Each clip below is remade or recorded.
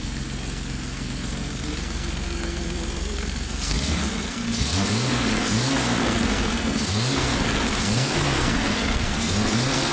remade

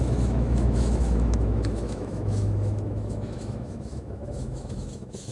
remade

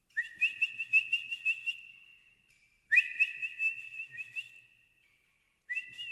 recorded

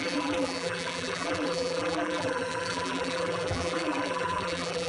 remade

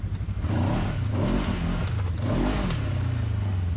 recorded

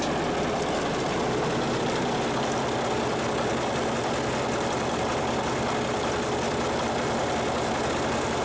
recorded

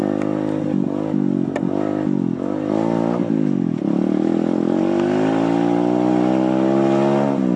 recorded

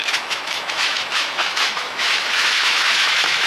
remade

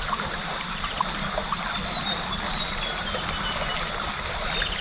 recorded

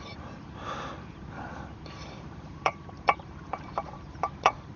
remade